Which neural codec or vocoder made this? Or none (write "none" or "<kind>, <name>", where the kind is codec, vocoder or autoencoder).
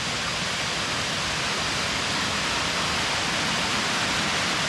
none